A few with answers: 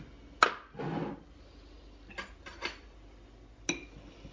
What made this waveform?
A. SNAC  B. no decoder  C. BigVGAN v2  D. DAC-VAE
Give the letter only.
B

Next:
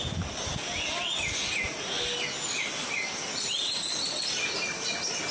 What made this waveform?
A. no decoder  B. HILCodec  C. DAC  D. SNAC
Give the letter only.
A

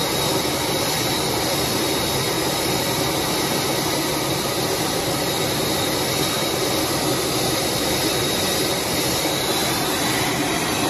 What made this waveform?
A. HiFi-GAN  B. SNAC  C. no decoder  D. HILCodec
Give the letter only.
C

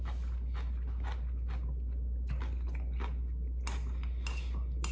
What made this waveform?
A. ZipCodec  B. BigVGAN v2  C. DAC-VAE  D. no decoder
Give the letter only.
D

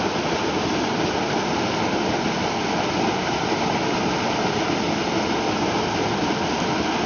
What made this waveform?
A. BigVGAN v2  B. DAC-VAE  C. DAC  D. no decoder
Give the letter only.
D